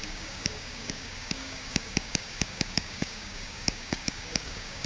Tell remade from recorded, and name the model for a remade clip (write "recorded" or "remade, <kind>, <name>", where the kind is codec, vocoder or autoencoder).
remade, codec, DAC